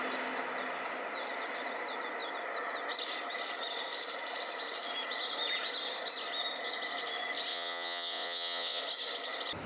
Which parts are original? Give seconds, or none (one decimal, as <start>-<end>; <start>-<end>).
0.0-7.5; 8.8-9.7